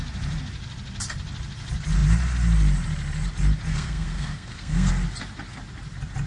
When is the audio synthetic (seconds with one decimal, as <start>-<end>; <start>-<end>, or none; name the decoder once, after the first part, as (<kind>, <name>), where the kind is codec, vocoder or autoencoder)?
3.7-4.9 (codec, SNAC)